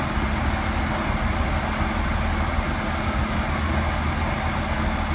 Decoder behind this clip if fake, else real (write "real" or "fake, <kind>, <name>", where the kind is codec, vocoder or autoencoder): real